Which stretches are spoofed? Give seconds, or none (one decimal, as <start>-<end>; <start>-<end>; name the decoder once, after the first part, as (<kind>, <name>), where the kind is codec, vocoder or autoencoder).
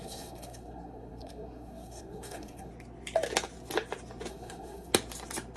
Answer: 0.0-2.7 (codec, SNAC); 4.3-4.9